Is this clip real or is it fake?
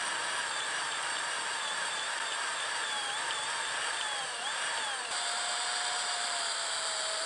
fake